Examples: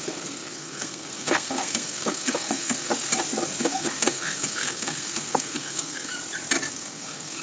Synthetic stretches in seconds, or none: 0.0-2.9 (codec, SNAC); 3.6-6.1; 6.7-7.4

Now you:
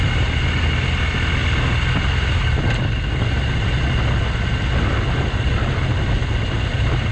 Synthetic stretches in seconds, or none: none

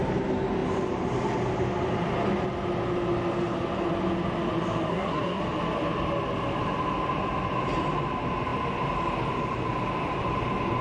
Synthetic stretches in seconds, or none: 4.9-5.4 (codec, SNAC)

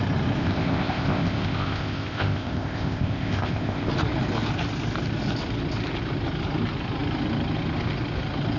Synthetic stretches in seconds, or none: 0.4-3.9 (codec, ZipCodec)

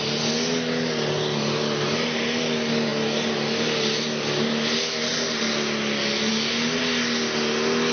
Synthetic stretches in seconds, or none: none

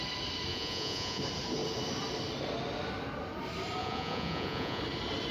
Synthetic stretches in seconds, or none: 0.5-1.2 (vocoder, Vocos); 3.8-4.8

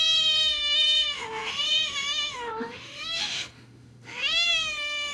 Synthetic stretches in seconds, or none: 0.0-5.1 (autoencoder, DAC-VAE)